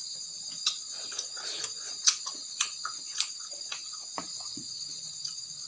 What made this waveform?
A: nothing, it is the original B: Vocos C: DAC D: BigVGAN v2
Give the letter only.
B